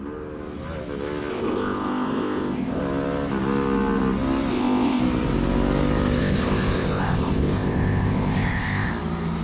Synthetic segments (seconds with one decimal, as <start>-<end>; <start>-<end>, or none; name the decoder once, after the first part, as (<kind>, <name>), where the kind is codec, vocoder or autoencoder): 1.3-2.8 (codec, ZipCodec); 4.5-5.0; 6.2-8.9